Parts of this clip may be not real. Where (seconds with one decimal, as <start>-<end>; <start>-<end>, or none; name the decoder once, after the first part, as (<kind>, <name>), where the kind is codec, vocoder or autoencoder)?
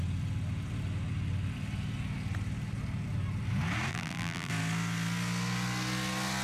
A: 3.9-4.5 (vocoder, BigVGAN v2)